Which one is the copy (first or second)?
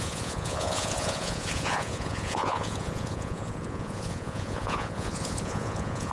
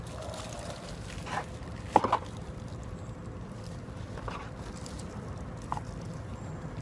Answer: first